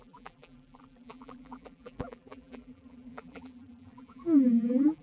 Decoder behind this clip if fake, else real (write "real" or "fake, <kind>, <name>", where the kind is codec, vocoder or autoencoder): fake, vocoder, BigVGAN v2